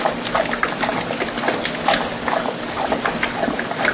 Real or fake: fake